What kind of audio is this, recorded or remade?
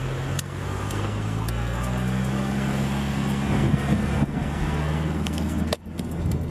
remade